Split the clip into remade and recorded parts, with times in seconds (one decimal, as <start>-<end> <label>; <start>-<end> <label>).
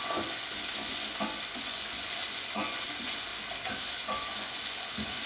0.0-3.3 remade; 3.3-3.9 recorded; 3.9-5.3 remade